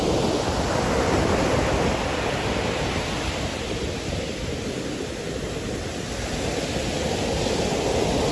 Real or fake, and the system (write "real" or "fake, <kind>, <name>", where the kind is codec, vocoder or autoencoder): real